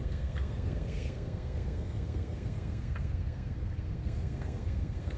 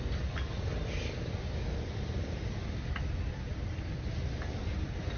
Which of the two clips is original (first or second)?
second